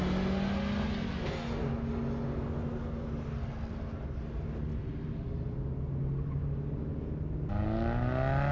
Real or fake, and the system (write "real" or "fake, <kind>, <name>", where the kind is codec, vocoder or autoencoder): real